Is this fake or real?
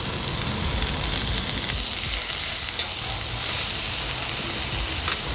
real